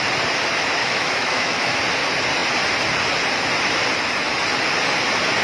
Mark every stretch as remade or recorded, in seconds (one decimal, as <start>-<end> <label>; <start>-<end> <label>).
0.0-0.8 recorded; 0.8-1.8 remade; 1.8-5.4 recorded